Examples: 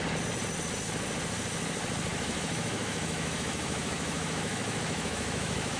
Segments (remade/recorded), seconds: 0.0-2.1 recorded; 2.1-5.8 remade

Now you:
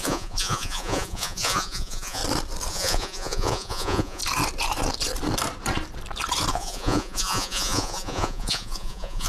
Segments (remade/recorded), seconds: 0.0-2.2 remade; 2.2-2.7 recorded; 2.7-4.2 remade; 4.2-6.5 recorded; 6.5-9.3 remade

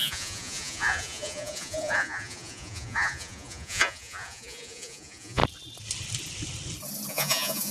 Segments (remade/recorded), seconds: 0.0-5.4 remade; 5.4-7.1 recorded; 7.1-7.7 remade

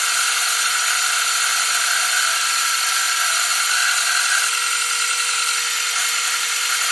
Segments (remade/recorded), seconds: 0.0-6.9 recorded

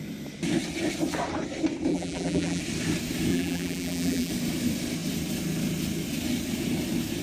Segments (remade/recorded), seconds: 0.0-1.9 recorded; 1.9-2.6 remade; 2.6-3.3 recorded; 3.3-4.3 remade; 4.3-7.2 recorded

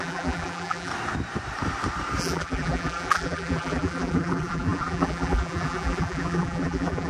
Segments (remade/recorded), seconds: 0.0-0.9 remade; 0.9-2.2 recorded; 2.2-7.1 remade

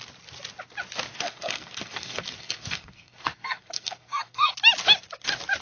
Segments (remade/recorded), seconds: 0.0-1.1 recorded; 1.1-4.5 remade; 4.5-5.6 recorded